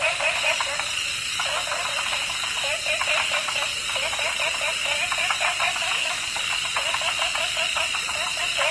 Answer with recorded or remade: remade